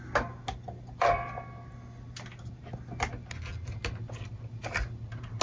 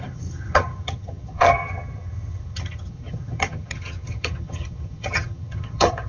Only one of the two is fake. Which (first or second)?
second